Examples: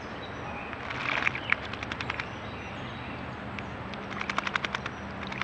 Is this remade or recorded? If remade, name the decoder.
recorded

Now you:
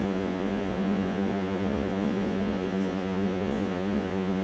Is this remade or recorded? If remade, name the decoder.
remade, vocoder, Vocos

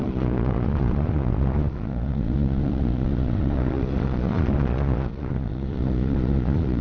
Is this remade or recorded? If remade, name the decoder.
remade, vocoder, Vocos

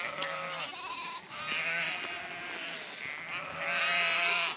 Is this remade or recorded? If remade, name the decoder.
recorded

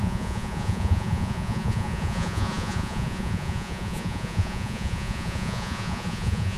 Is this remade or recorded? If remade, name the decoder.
remade, vocoder, Vocos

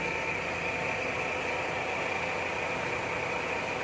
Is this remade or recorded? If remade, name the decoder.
recorded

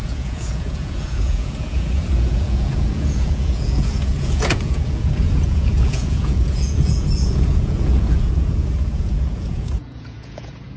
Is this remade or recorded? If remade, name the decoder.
remade, vocoder, Vocos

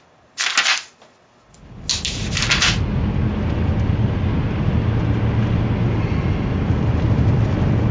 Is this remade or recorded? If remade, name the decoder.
recorded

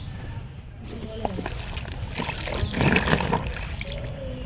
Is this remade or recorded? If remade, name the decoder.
recorded